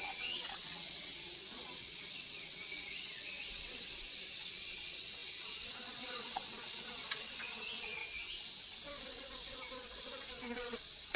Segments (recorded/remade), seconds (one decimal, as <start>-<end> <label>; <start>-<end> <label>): 0.0-8.0 remade; 8.0-9.0 recorded; 9.0-11.2 remade